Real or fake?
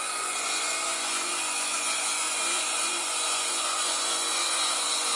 fake